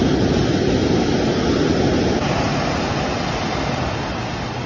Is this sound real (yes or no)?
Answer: yes